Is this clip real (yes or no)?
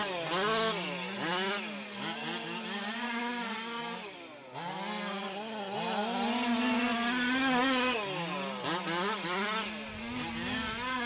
yes